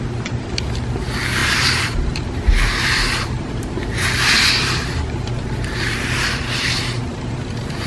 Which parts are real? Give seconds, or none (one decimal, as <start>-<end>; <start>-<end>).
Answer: 0.0-1.4; 6.1-7.1